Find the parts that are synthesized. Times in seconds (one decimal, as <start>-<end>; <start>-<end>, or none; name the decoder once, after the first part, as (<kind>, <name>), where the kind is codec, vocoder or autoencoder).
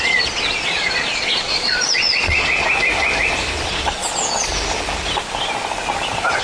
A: 0.0-2.7 (vocoder, Vocos); 3.7-4.5